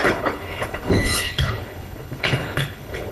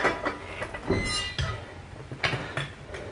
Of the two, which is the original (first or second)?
second